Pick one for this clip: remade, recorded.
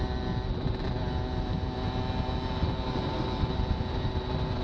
recorded